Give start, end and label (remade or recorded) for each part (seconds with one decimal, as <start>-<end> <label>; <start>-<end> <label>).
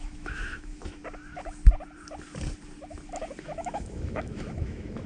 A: 0.0-1.0 remade; 1.0-3.4 recorded; 3.4-5.1 remade